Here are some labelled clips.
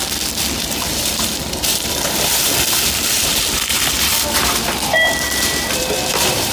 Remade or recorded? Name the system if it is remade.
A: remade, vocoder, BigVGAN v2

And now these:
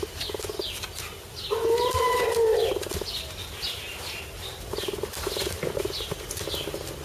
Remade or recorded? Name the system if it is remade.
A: recorded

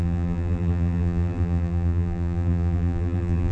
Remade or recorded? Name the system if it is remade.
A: remade, vocoder, BigVGAN v2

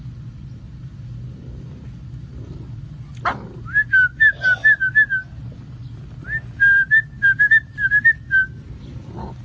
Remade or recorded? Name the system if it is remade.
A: recorded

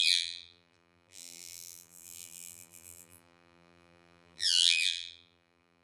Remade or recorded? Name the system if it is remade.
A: remade, vocoder, BigVGAN v2